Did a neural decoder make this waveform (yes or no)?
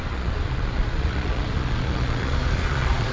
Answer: yes